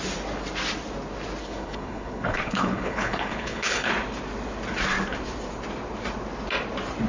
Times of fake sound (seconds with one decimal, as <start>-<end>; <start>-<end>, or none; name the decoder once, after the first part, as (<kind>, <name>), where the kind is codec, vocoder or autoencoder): 1.4-3.9 (codec, HILCodec)

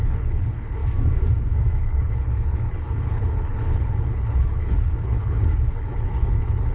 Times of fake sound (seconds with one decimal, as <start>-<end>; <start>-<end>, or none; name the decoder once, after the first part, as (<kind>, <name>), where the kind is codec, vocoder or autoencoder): 0.0-0.8 (codec, HILCodec); 1.8-6.7

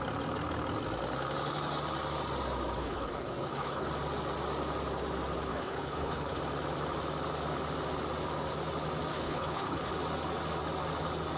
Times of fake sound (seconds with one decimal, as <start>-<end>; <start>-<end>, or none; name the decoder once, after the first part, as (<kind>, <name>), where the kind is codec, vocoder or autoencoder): 2.8-3.9 (codec, HILCodec); 5.5-6.4; 9.1-9.9

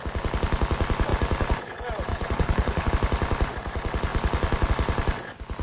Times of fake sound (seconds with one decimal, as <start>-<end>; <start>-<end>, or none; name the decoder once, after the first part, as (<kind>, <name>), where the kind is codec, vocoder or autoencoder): 2.1-2.9 (codec, HILCodec)

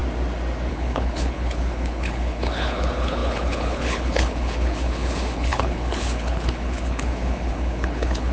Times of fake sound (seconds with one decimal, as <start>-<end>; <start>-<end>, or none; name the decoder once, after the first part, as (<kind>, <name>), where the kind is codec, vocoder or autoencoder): 0.7-8.3 (codec, HILCodec)

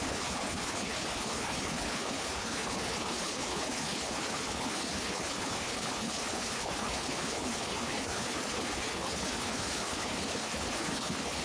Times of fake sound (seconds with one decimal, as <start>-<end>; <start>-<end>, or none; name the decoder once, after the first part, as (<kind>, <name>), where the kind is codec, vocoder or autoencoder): 0.0-11.4 (codec, HILCodec)